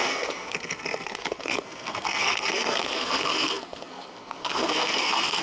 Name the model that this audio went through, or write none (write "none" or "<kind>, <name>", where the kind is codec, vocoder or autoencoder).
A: codec, SNAC